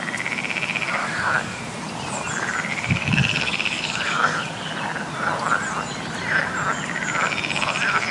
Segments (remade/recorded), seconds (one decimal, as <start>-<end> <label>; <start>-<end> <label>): 0.0-1.0 recorded; 1.0-1.6 remade; 1.6-2.7 recorded; 2.7-4.7 remade; 4.7-8.1 recorded